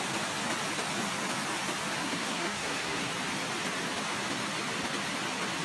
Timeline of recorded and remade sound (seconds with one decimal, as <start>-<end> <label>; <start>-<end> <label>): 0.0-2.0 recorded; 2.0-3.1 remade; 3.1-5.6 recorded